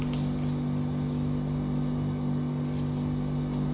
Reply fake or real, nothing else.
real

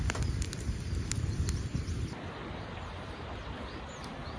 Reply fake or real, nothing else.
real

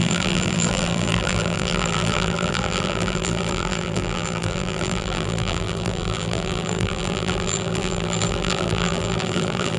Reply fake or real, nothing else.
fake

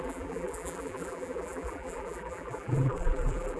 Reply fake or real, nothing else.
fake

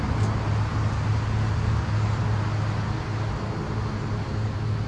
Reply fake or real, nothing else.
real